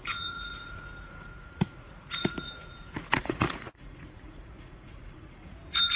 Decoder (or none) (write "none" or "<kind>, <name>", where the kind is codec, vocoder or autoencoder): vocoder, Vocos